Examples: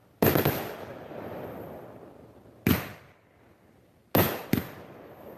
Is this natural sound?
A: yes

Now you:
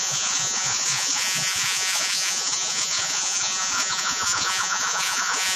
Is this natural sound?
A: no